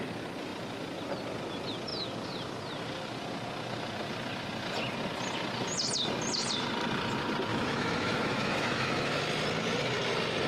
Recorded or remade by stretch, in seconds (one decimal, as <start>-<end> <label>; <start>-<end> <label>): 0.0-7.5 recorded; 7.5-9.2 remade; 9.2-10.5 recorded